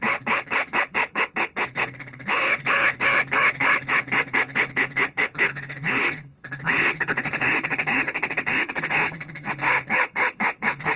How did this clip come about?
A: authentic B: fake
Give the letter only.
B